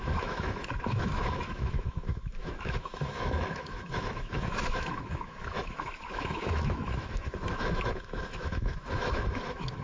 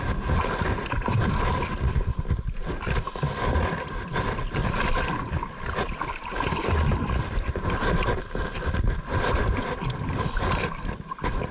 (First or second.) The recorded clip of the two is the second